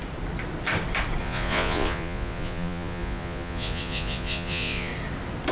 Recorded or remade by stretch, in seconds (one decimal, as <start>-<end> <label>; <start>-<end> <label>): 0.0-1.2 recorded; 1.2-4.9 remade; 4.9-5.5 recorded